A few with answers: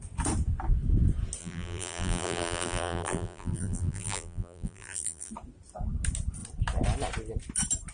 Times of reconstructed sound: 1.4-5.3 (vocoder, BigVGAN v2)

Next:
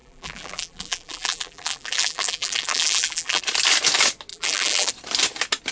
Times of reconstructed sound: 0.0-3.4 (vocoder, BigVGAN v2); 4.3-4.9

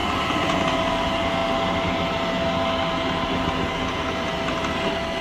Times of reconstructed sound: none

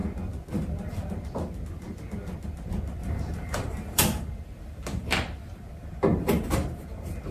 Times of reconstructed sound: 3.0-4.0 (vocoder, BigVGAN v2); 6.1-6.8

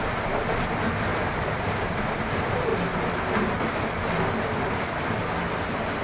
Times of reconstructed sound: 1.1-2.1 (vocoder, BigVGAN v2)

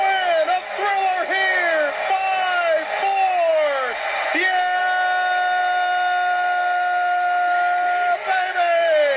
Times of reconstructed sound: none

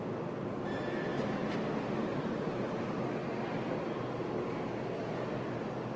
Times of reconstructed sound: 1.1-1.6 (vocoder, BigVGAN v2); 2.1-3.0

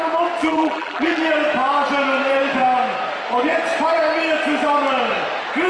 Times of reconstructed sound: 0.4-1.2 (vocoder, BigVGAN v2)